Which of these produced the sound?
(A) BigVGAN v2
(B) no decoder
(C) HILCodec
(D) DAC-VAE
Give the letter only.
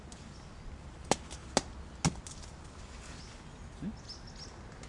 B